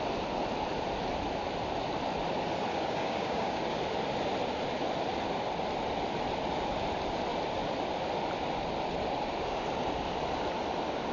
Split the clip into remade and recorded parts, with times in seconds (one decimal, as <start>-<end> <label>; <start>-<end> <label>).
0.0-2.7 recorded; 2.7-3.6 remade; 3.6-11.1 recorded